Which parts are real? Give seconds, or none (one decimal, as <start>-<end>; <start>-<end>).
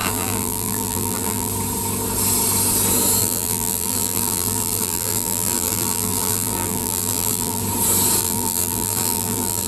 1.5-3.2; 7.6-8.2